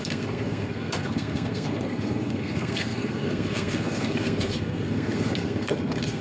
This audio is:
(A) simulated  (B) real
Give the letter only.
A